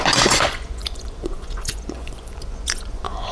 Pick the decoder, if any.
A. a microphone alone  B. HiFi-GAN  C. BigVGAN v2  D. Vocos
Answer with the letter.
D